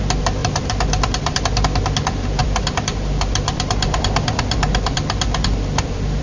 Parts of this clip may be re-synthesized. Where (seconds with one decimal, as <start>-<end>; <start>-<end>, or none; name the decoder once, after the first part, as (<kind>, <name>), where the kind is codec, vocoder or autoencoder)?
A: 0.4-1.6 (vocoder, BigVGAN v2); 2.4-6.2